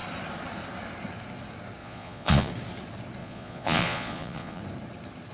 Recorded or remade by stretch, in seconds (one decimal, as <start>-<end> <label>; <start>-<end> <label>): 0.0-1.8 recorded; 1.8-2.5 remade; 2.5-3.2 recorded; 3.2-4.6 remade; 4.6-5.3 recorded